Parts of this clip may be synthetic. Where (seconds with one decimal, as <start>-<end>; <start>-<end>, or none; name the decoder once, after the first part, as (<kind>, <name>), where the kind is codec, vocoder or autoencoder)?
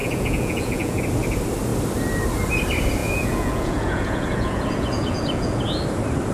0.0-1.0 (vocoder, Vocos); 3.0-5.6